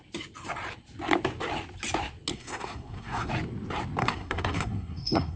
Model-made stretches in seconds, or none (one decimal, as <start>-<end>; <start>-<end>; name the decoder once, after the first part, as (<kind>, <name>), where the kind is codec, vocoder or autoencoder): 2.3-3.3 (codec, SNAC); 4.0-5.4